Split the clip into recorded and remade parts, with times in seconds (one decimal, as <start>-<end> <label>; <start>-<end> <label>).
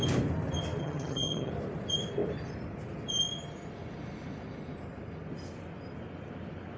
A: 0.0-0.8 recorded; 0.8-1.5 remade; 1.5-6.8 recorded